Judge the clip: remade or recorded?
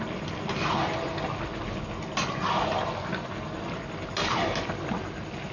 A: recorded